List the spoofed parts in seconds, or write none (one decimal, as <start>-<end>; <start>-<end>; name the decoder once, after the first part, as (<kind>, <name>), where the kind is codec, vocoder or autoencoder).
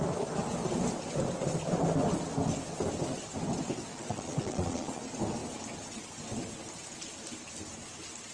3.9-5.0 (vocoder, Vocos)